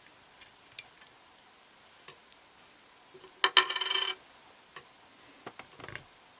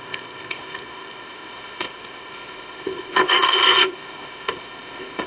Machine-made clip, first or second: second